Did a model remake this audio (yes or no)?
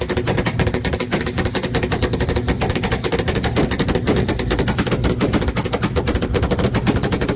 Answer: no